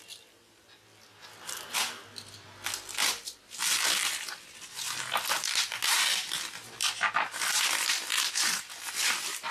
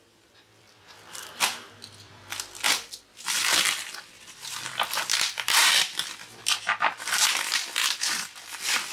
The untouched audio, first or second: first